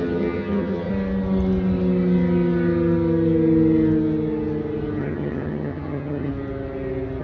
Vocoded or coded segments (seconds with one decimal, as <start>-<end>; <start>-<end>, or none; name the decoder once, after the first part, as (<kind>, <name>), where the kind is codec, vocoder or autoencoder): 0.0-0.9 (vocoder, HiFi-GAN); 5.0-6.3